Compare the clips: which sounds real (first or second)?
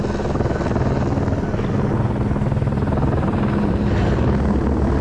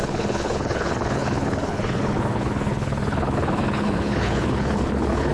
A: first